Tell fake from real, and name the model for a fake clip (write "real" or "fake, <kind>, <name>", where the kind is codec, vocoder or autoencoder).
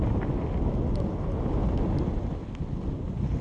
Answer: real